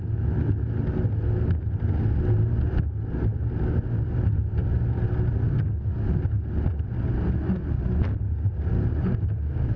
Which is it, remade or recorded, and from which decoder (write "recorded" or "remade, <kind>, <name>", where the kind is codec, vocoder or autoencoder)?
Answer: recorded